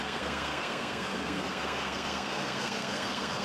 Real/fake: fake